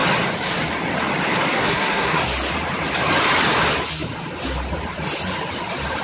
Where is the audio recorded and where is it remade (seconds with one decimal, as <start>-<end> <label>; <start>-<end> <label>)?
0.0-1.5 recorded; 1.5-2.2 remade; 2.2-6.0 recorded